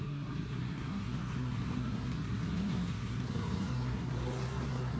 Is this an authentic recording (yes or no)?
no